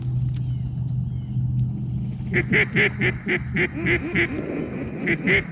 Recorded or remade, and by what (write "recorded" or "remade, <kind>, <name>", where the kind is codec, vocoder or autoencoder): recorded